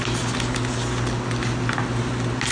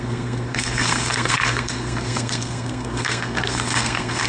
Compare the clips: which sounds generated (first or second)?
second